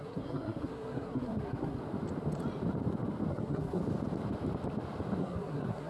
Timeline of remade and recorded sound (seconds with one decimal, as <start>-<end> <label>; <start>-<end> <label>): 0.0-1.8 remade; 1.8-3.3 recorded; 3.3-3.8 remade; 3.8-5.2 recorded; 5.2-5.9 remade